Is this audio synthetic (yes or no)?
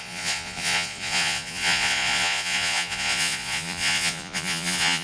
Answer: yes